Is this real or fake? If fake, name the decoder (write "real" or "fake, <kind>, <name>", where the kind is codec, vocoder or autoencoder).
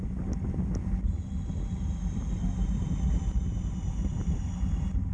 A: real